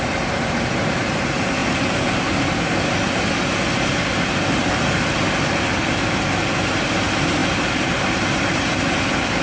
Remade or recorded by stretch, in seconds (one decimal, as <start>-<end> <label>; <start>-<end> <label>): 0.0-9.4 recorded